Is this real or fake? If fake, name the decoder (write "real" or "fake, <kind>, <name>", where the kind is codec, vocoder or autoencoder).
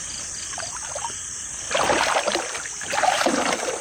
fake, vocoder, BigVGAN v2